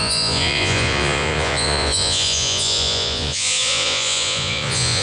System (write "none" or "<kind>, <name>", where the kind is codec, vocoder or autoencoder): vocoder, Vocos